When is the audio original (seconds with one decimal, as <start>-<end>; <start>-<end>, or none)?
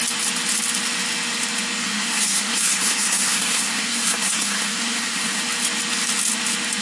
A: 0.0-1.8; 5.4-6.8